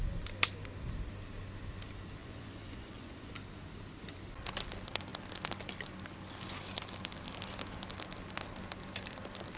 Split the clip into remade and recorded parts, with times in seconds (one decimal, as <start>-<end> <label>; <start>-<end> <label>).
0.0-2.2 recorded; 2.2-3.4 remade; 3.4-9.6 recorded